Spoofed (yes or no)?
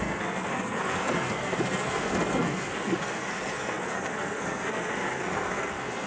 yes